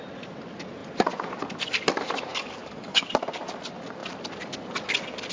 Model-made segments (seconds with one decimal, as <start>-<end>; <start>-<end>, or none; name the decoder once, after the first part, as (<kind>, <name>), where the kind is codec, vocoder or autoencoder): 2.3-3.1 (codec, DAC)